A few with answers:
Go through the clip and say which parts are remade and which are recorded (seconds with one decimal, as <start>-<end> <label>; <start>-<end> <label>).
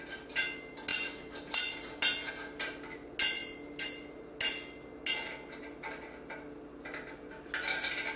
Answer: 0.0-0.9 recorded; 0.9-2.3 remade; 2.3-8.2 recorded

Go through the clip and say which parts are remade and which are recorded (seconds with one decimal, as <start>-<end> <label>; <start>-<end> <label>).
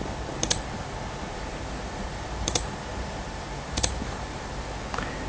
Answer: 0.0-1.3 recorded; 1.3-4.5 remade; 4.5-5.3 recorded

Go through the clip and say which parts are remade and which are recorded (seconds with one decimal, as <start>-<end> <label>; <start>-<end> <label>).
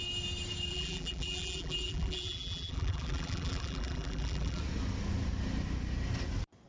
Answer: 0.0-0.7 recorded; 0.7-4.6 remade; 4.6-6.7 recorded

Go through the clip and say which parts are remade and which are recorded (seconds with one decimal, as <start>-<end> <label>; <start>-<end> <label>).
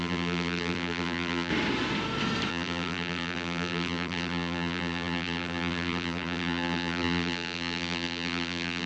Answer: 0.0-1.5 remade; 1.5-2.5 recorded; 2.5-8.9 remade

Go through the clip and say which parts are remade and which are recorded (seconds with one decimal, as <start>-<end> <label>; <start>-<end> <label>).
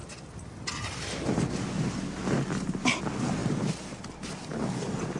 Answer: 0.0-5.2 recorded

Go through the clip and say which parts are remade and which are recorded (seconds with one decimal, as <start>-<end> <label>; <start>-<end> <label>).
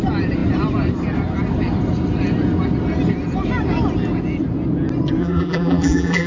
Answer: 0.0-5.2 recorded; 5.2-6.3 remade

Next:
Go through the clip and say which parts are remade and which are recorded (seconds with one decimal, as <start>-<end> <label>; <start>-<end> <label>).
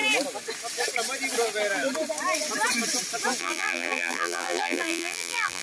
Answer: 0.0-3.4 recorded; 3.4-5.6 remade